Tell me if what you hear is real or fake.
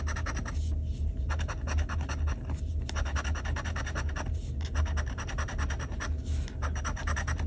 real